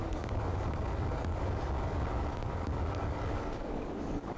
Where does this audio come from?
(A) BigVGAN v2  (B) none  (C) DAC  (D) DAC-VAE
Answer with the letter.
C